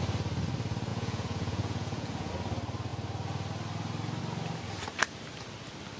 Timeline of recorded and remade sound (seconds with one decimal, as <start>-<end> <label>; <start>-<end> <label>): 0.0-0.9 recorded; 0.9-2.3 remade; 2.3-6.0 recorded

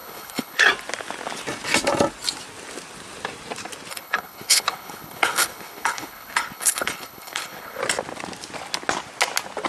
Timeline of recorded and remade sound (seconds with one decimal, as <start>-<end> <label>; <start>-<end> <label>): 0.0-0.7 remade; 0.7-3.9 recorded; 3.9-7.8 remade; 7.8-9.7 recorded

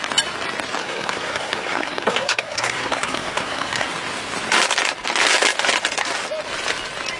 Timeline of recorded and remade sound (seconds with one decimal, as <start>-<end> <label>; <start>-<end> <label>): 0.0-0.8 recorded; 0.8-3.9 remade; 3.9-7.2 recorded